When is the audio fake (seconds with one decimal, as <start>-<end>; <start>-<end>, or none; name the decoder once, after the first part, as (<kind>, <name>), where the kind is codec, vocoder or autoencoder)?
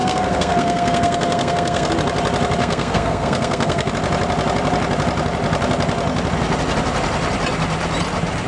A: 0.0-1.9 (codec, SNAC); 2.6-3.9